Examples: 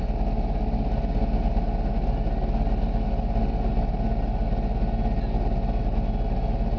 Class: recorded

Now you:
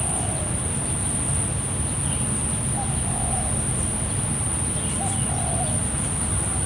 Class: recorded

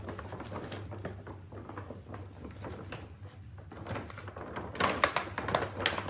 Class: recorded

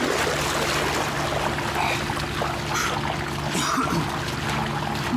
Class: recorded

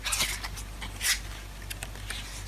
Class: recorded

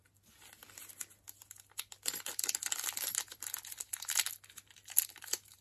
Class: recorded